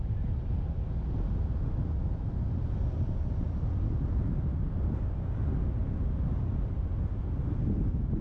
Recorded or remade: recorded